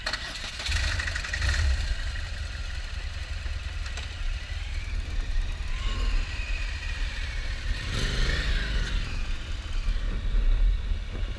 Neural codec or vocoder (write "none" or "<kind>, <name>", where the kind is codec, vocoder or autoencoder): vocoder, BigVGAN v2